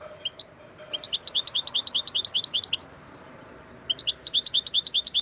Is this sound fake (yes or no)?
yes